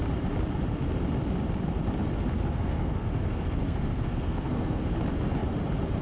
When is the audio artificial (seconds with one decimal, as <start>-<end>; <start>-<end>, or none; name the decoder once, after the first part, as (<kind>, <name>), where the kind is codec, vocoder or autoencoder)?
2.4-4.9 (codec, SNAC)